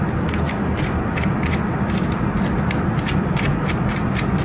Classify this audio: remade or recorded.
recorded